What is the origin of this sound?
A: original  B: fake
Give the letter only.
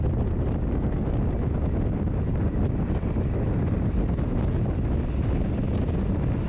A